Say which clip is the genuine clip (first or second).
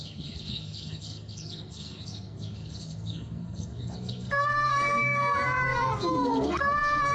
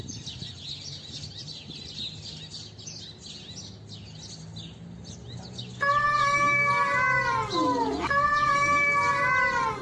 second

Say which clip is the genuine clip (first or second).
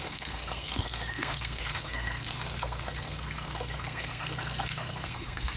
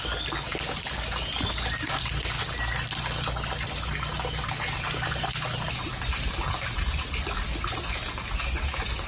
second